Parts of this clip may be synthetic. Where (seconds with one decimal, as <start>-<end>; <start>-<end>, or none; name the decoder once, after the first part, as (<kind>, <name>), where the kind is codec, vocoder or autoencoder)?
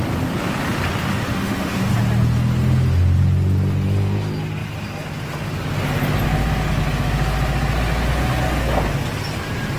1.1-1.9 (autoencoder, DAC-VAE)